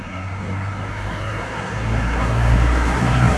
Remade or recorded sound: remade